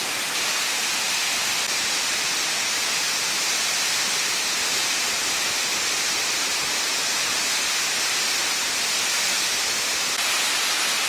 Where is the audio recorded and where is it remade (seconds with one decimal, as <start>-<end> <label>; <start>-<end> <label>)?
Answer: 0.0-11.1 recorded